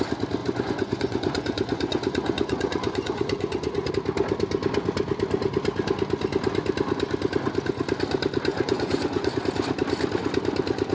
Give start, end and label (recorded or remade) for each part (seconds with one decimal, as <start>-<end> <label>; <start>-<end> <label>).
0.0-0.4 recorded; 0.4-3.9 remade; 3.9-8.5 recorded; 8.5-9.3 remade; 9.3-10.9 recorded